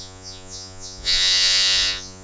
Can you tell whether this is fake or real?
fake